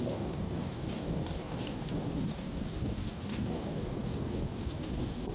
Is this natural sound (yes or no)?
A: no